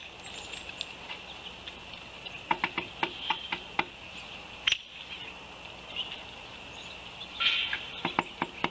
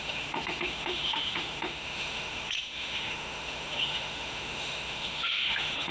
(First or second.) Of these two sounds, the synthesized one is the second